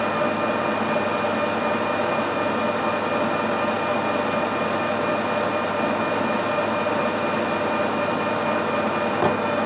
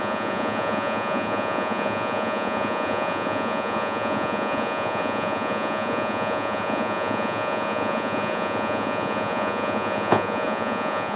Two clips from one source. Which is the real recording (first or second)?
first